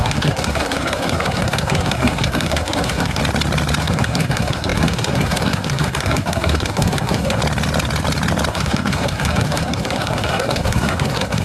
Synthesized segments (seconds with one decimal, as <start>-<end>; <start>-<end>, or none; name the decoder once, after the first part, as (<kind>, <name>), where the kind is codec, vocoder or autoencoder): 0.0-3.2 (codec, SNAC); 3.8-7.4; 8.5-11.4